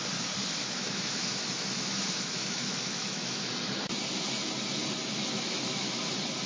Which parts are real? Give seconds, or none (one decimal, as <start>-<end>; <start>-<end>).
0.0-0.6; 3.5-5.2; 6.0-6.5